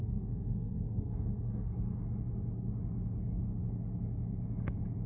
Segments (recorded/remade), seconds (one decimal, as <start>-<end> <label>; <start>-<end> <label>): 0.0-1.9 remade; 1.9-5.1 recorded